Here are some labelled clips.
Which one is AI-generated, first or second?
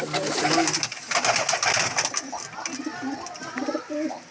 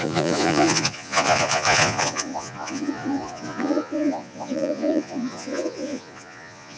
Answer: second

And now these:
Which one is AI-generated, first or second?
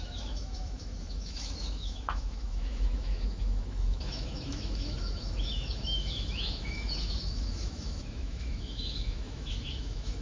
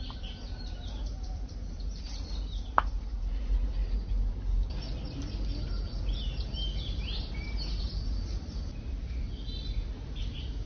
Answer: first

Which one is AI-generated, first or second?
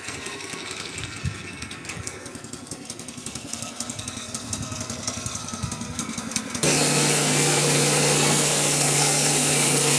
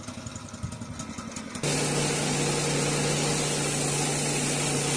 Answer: first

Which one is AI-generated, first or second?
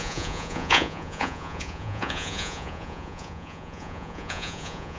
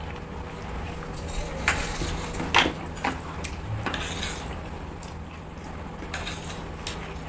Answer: first